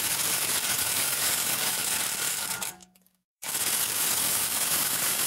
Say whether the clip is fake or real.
fake